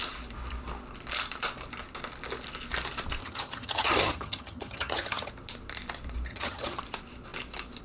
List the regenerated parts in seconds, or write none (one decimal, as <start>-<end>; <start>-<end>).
3.2-5.3; 6.3-6.8